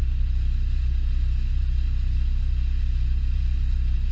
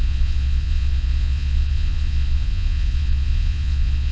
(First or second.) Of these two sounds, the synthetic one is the second